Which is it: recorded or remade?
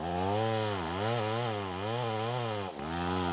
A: recorded